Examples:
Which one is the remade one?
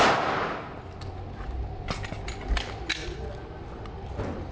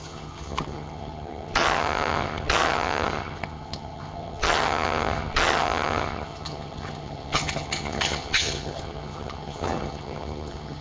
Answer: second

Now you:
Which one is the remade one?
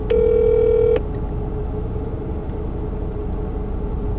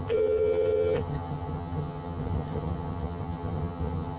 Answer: second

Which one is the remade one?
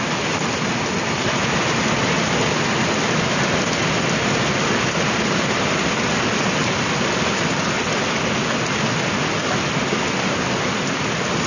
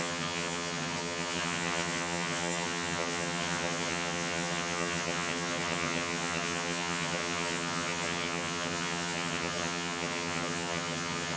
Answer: second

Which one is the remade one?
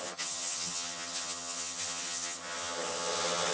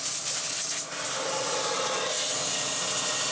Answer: first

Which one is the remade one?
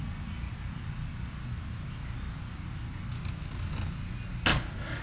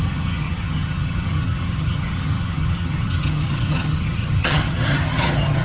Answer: second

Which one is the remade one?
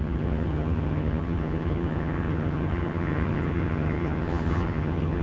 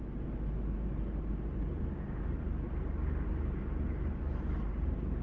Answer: first